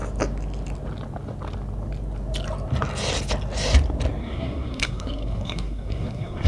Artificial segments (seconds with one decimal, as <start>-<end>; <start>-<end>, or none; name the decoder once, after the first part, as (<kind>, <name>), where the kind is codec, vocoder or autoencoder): 4.2-6.5 (codec, SNAC)